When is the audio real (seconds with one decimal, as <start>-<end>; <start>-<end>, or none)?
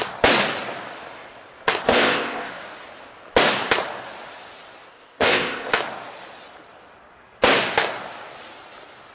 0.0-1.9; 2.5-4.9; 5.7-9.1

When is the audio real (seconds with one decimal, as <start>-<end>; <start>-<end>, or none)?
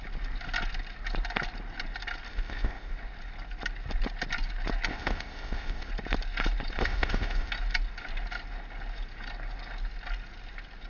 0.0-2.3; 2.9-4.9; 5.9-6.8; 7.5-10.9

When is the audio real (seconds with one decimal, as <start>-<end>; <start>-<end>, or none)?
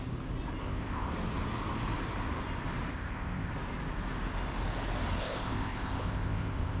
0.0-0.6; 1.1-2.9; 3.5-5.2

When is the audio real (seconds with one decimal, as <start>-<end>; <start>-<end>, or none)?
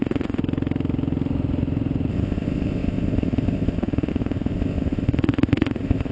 0.4-2.1